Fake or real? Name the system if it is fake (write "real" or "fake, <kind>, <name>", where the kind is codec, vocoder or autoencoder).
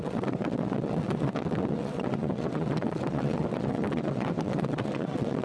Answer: fake, vocoder, WaveNeXt